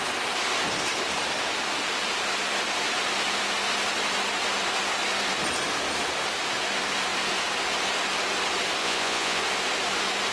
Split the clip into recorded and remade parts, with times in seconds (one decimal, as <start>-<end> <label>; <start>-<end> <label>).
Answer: 0.0-8.8 recorded; 8.8-9.4 remade; 9.4-10.3 recorded